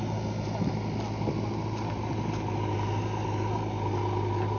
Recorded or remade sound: recorded